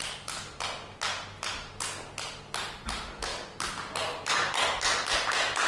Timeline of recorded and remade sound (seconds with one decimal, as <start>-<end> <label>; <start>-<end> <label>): 0.0-0.6 remade; 0.6-5.7 recorded

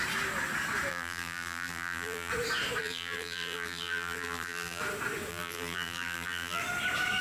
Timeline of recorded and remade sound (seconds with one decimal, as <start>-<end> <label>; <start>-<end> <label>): 0.0-0.9 recorded; 0.9-2.3 remade; 2.3-2.8 recorded; 2.8-4.8 remade; 4.8-5.3 recorded; 5.3-6.6 remade; 6.6-7.2 recorded